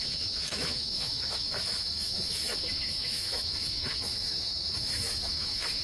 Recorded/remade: remade